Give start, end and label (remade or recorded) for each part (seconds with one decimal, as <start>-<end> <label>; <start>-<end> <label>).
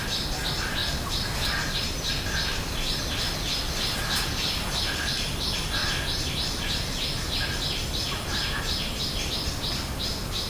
0.0-10.5 recorded